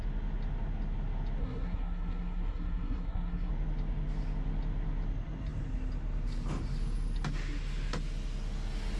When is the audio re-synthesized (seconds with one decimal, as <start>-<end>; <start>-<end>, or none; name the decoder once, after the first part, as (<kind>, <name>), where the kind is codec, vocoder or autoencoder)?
1.4-3.5 (codec, SNAC)